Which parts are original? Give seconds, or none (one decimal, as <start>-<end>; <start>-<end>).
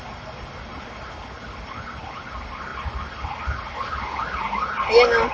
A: 0.0-5.3